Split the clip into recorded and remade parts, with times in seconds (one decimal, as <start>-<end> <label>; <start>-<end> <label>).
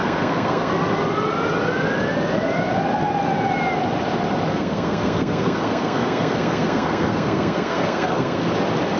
0.0-0.7 remade; 0.7-4.5 recorded; 4.5-8.5 remade; 8.5-9.0 recorded